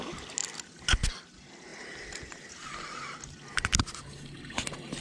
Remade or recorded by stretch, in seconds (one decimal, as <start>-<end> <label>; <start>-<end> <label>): 0.0-5.0 recorded